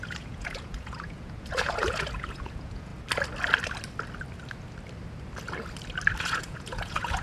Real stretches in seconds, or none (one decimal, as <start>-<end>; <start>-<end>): 2.9-6.2